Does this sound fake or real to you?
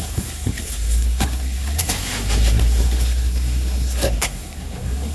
fake